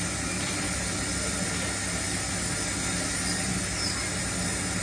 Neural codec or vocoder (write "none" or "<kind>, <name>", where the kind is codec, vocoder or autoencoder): none